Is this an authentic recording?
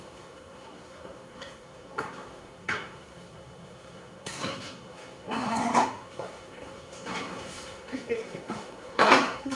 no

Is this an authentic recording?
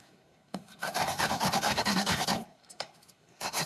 no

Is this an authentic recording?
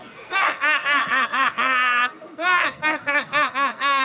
no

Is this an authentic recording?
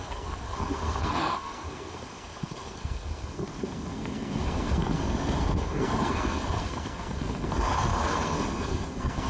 no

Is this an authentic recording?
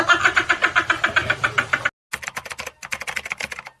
yes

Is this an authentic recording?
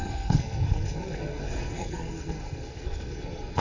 no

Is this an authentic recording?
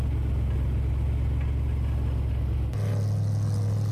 yes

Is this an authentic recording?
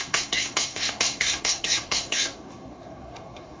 no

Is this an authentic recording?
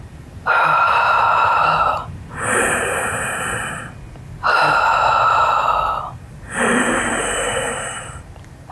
yes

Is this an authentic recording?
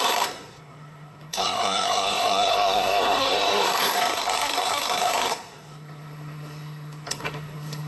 no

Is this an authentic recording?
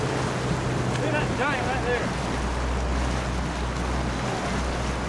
yes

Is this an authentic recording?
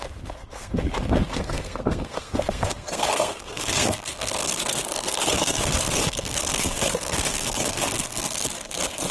no